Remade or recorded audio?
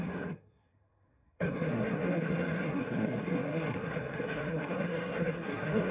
remade